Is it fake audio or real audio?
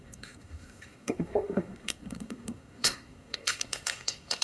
fake